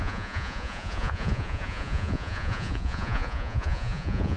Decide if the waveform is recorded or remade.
remade